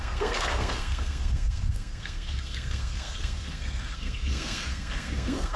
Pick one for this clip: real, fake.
fake